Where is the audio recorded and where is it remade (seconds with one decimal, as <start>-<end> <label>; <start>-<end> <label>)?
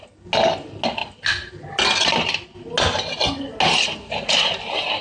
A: 0.0-5.0 recorded